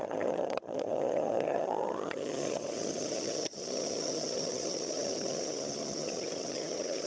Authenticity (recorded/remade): remade